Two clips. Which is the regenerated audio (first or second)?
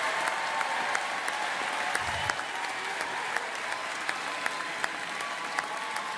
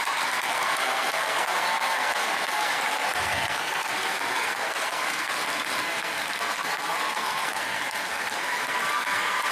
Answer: second